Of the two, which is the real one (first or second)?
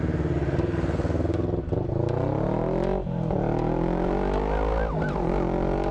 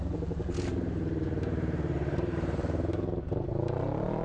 first